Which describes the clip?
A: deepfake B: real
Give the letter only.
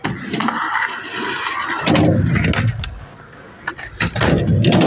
B